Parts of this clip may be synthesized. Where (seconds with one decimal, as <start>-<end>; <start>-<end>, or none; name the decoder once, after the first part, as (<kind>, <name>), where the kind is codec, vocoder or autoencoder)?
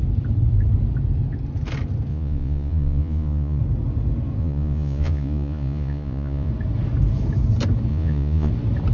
2.1-3.6 (vocoder, Vocos); 4.4-6.5; 7.9-8.5